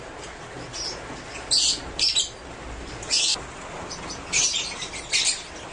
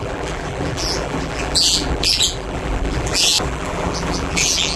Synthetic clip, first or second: second